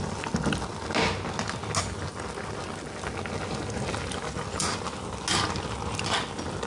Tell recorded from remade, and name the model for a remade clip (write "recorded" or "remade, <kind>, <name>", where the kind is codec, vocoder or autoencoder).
recorded